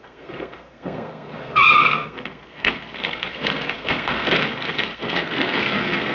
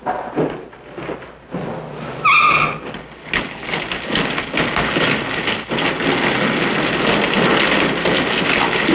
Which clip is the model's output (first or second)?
first